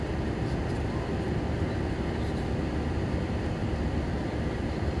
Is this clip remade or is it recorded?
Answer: recorded